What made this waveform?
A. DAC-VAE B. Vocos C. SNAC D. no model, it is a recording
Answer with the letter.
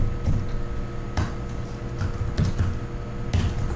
D